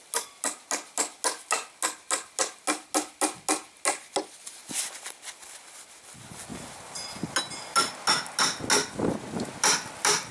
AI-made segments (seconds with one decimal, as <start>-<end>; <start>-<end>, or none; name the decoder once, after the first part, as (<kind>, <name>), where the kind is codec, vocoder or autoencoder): none